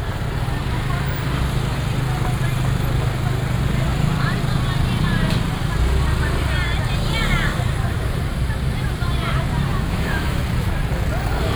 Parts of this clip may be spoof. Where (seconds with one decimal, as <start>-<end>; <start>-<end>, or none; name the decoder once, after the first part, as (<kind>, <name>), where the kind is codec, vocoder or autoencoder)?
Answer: 9.7-10.4 (autoencoder, DAC-VAE)